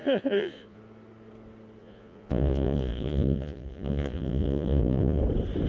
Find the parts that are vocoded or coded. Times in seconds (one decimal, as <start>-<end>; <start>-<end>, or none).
0.0-0.8; 1.8-5.2